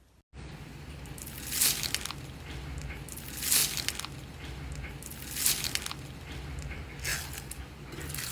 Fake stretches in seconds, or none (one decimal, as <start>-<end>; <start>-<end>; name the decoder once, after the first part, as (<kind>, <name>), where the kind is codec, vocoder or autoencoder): none